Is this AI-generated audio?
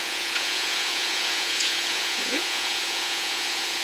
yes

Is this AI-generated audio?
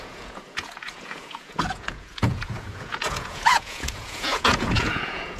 yes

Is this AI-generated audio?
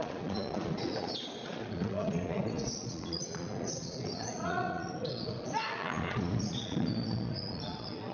yes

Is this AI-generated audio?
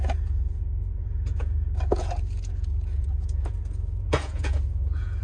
yes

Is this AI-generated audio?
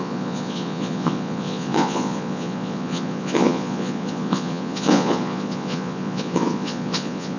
yes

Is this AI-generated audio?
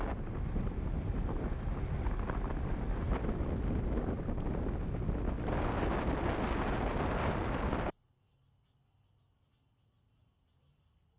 no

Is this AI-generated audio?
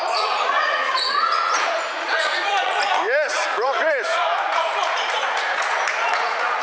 yes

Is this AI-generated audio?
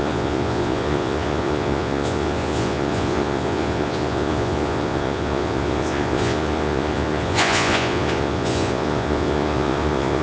yes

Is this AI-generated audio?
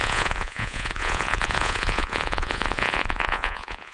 yes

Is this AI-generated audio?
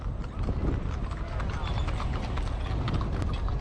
no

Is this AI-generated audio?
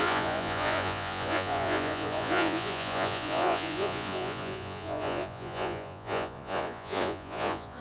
yes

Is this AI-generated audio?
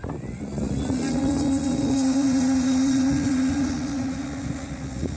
yes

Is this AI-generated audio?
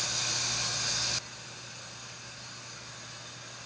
no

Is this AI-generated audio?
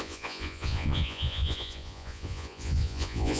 yes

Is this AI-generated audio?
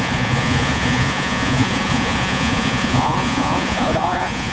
yes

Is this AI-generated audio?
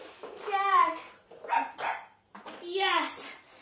no